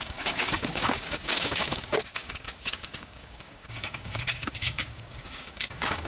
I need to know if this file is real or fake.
fake